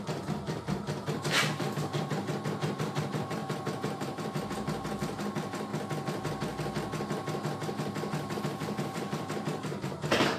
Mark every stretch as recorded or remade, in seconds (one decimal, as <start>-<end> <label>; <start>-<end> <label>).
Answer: 0.0-5.7 remade; 5.7-8.4 recorded; 8.4-10.4 remade

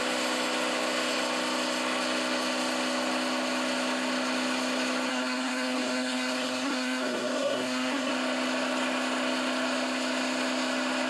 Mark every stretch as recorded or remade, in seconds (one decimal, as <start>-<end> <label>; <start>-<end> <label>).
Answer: 0.0-5.1 recorded; 5.1-8.1 remade; 8.1-11.1 recorded

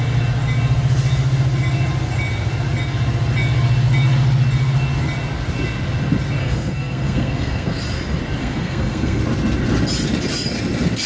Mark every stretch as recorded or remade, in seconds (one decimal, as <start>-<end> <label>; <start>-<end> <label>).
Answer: 0.0-6.4 recorded; 6.4-7.8 remade; 7.8-8.4 recorded; 8.4-9.2 remade; 9.2-11.1 recorded

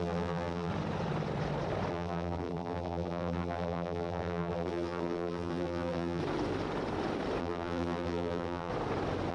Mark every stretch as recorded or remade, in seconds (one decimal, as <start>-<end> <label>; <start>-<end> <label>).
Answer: 0.0-0.7 remade; 0.7-1.9 recorded; 1.9-6.2 remade; 6.2-7.4 recorded; 7.4-8.7 remade; 8.7-9.3 recorded